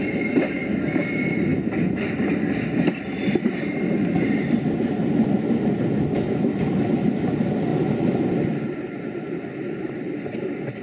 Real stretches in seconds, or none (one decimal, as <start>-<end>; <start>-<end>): 0.0-10.8